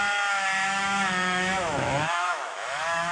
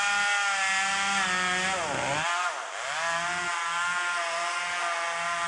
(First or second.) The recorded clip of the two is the second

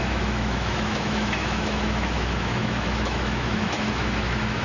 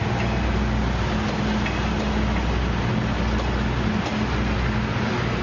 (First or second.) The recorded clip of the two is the second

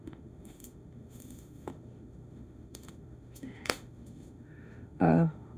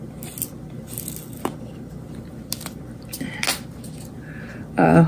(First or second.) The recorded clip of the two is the second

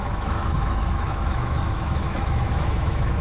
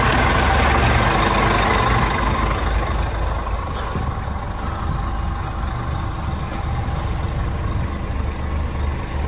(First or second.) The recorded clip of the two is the second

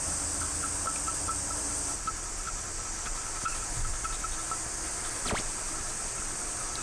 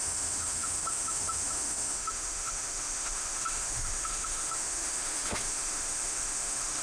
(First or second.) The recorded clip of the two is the first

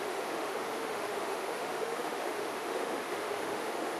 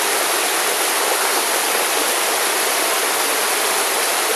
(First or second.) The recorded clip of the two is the second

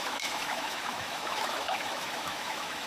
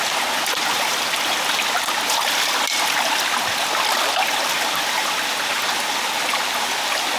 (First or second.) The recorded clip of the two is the second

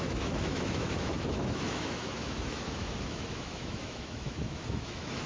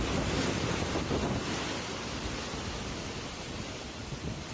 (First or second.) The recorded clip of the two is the second